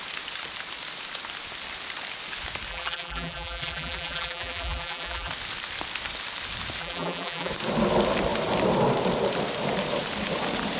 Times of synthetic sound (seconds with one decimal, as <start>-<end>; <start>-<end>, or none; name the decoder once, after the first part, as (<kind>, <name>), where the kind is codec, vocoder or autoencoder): 2.7-5.3 (vocoder, BigVGAN v2); 6.8-7.5